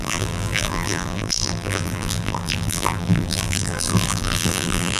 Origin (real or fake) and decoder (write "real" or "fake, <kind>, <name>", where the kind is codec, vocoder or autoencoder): fake, vocoder, BigVGAN v2